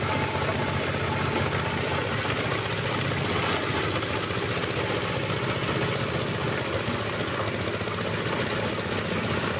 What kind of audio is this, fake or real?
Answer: real